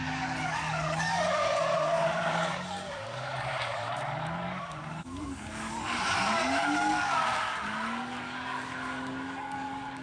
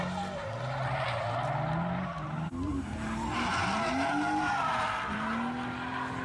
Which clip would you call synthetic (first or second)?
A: first